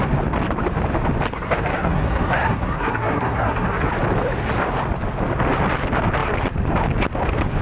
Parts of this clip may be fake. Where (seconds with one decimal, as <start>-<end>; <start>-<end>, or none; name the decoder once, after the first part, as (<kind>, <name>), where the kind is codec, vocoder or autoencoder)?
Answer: 1.3-3.9 (codec, SNAC)